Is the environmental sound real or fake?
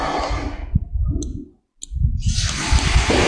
real